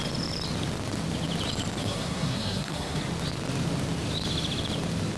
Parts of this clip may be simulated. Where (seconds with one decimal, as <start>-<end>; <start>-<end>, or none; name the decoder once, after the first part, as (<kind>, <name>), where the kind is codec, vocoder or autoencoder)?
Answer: 1.8-3.0 (codec, SNAC)